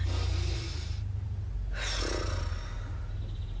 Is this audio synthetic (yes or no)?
no